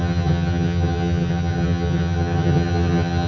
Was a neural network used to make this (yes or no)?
yes